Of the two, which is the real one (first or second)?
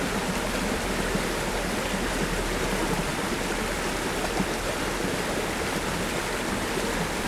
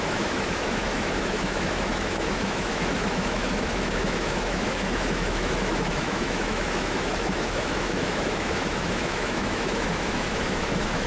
first